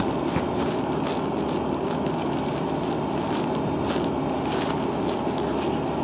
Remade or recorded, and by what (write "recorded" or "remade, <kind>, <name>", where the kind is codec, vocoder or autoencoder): recorded